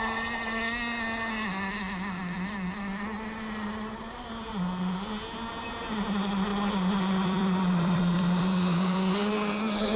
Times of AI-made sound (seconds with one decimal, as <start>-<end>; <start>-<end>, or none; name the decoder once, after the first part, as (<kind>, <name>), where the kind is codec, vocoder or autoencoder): 6.5-9.3 (vocoder, BigVGAN v2)